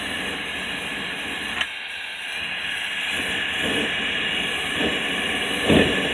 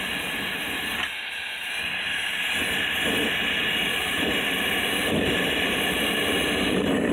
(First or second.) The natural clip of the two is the first